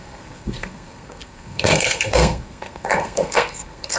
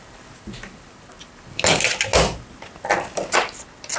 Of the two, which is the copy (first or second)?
first